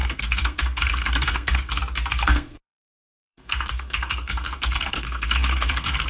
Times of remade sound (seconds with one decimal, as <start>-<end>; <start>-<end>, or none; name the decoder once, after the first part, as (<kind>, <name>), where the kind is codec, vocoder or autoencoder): 0.0-1.7 (codec, SNAC); 2.1-6.1